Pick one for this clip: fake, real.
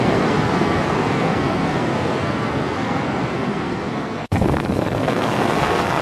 fake